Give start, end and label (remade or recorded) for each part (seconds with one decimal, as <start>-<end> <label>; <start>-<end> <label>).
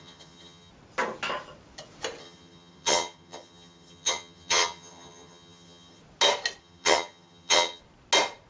0.0-0.7 remade; 0.7-2.2 recorded; 2.2-6.0 remade; 6.0-6.6 recorded; 6.6-7.8 remade; 7.8-8.5 recorded